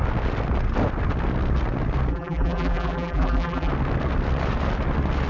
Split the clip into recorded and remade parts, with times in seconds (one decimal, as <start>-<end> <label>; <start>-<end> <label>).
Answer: 0.0-2.1 recorded; 2.1-3.7 remade; 3.7-5.3 recorded